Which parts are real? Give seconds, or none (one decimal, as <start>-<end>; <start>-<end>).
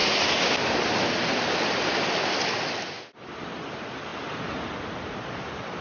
0.0-5.8